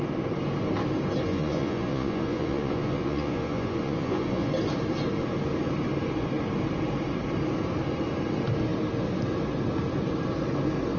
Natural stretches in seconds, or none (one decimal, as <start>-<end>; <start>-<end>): 0.0-1.3; 4.5-11.0